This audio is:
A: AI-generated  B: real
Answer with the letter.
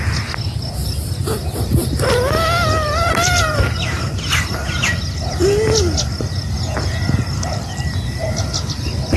B